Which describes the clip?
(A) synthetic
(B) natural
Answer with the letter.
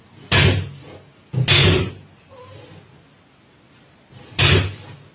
B